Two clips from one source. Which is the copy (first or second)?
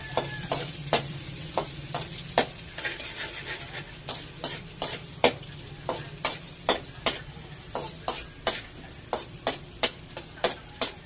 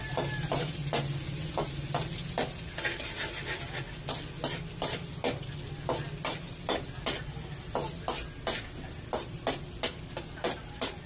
first